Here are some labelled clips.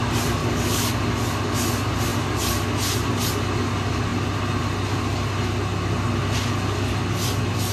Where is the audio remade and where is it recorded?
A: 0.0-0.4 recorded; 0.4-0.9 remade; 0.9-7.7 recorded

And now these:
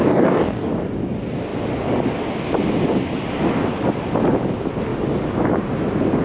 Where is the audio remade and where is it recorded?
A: 0.0-0.7 remade; 0.7-6.2 recorded

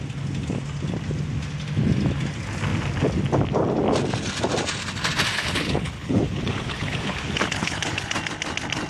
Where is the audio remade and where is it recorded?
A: 0.0-5.3 recorded; 5.3-8.1 remade; 8.1-8.9 recorded

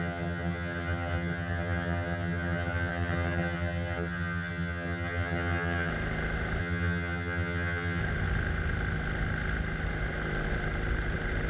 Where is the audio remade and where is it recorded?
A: 0.0-5.9 remade; 5.9-6.6 recorded; 6.6-8.0 remade; 8.0-11.5 recorded

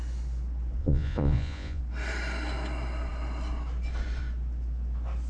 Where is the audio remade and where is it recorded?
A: 0.0-0.8 recorded; 0.8-1.8 remade; 1.8-5.3 recorded